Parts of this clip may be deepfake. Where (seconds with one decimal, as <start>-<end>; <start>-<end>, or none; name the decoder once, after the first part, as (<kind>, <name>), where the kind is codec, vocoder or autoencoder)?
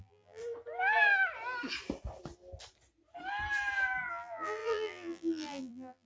0.0-0.4 (vocoder, BigVGAN v2); 4.1-6.1